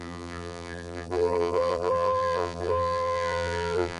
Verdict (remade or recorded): remade